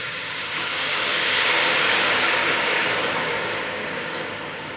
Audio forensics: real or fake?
fake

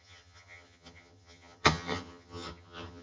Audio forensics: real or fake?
fake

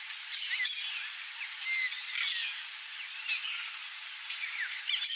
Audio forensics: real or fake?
real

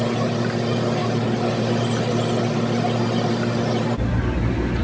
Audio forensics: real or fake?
real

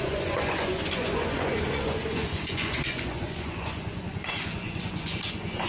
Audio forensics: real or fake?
fake